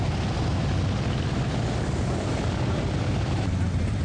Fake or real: real